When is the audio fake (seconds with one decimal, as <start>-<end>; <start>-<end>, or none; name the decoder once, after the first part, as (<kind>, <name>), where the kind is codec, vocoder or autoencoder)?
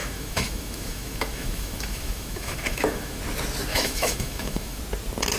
0.0-3.2 (autoencoder, DAC-VAE); 3.7-4.8